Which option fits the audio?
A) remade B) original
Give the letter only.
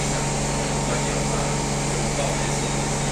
B